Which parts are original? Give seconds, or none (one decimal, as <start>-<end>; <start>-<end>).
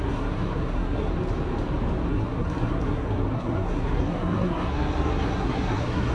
1.1-2.1